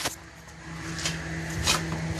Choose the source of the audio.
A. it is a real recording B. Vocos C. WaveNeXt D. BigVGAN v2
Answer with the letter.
A